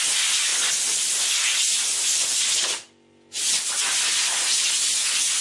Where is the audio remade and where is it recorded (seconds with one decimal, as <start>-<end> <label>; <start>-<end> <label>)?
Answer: 0.0-5.4 recorded